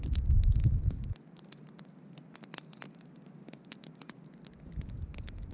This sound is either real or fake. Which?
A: real